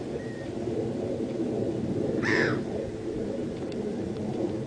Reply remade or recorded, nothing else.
remade